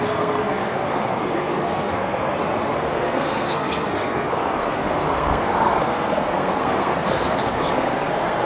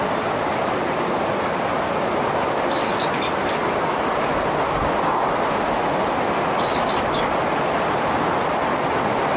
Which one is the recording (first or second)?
second